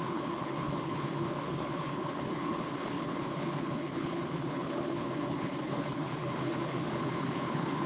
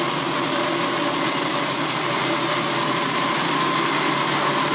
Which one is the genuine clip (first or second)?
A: second